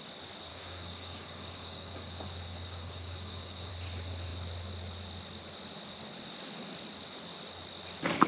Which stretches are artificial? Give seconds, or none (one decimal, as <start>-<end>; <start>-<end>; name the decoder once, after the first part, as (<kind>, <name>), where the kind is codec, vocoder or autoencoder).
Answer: 0.5-3.7 (codec, DAC)

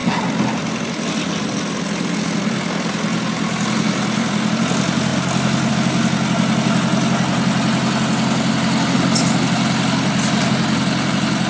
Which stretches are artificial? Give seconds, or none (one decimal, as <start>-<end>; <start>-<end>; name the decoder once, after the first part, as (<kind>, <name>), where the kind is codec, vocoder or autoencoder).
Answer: none